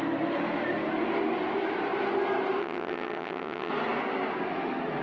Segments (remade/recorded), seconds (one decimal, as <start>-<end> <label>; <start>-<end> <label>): 0.0-2.6 recorded; 2.6-3.7 remade; 3.7-5.0 recorded